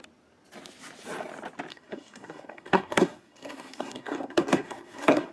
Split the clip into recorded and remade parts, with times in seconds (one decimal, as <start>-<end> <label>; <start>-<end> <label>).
0.0-1.7 recorded; 1.7-5.3 remade